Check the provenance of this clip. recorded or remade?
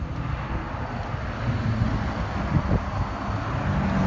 recorded